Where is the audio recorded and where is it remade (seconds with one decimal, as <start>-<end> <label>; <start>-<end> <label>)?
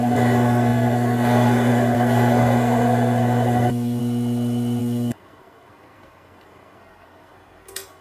0.0-4.0 remade; 4.0-4.8 recorded; 4.8-8.0 remade